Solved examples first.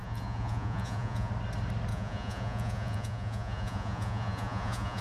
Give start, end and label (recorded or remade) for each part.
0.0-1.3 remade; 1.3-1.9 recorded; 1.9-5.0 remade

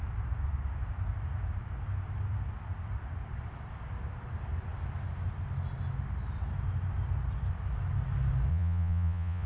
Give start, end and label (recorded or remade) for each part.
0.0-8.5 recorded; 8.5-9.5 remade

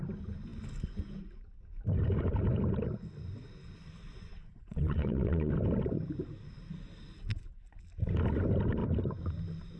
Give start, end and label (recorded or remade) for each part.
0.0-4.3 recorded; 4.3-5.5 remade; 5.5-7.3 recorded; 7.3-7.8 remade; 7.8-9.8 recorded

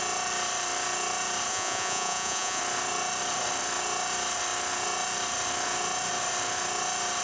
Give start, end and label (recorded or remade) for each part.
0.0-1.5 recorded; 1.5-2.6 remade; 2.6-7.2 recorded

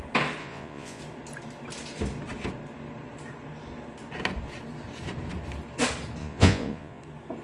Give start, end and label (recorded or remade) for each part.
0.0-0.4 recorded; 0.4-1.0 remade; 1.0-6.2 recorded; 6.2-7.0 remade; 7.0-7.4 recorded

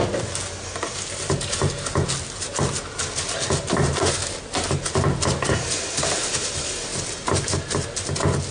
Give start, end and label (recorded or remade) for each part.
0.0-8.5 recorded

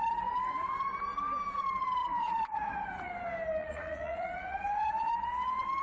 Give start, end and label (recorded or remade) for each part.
0.0-2.0 recorded; 2.0-3.1 remade; 3.1-3.6 recorded; 3.6-5.1 remade; 5.1-5.8 recorded